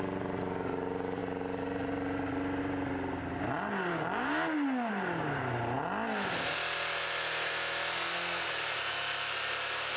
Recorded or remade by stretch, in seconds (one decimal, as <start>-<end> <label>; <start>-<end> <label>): 0.0-3.9 recorded; 3.9-4.9 remade; 4.9-10.0 recorded

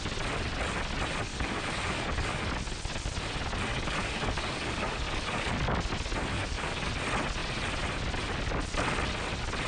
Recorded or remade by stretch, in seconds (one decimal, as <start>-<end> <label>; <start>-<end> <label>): 0.0-1.3 recorded; 1.3-2.5 remade; 2.5-3.7 recorded; 3.7-5.5 remade; 5.5-6.3 recorded; 6.3-6.9 remade; 6.9-9.7 recorded

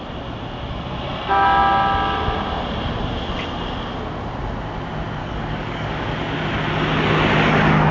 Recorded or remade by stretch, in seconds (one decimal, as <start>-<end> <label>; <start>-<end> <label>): 0.0-5.2 recorded; 5.2-6.1 remade; 6.1-7.9 recorded

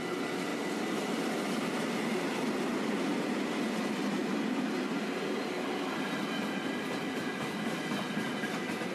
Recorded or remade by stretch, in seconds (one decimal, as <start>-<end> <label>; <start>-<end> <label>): 0.0-8.9 recorded